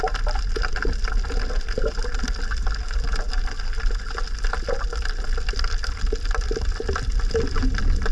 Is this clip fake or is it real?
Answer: real